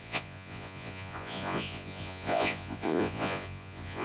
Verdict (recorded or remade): remade